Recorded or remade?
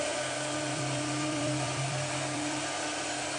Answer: remade